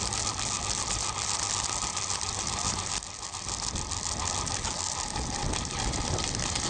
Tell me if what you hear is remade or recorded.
recorded